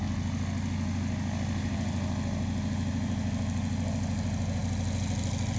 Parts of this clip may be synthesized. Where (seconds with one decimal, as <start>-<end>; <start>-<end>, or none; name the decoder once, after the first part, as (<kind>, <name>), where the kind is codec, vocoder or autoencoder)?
none